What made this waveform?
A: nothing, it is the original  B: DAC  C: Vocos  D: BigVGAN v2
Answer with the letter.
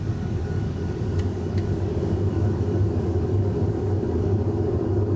B